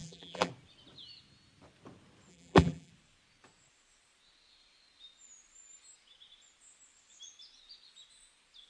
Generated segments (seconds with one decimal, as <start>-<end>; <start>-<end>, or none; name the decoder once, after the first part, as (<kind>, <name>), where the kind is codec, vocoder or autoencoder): 0.0-0.5 (vocoder, BigVGAN v2); 2.3-2.9